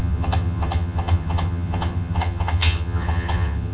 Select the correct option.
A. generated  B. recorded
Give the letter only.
A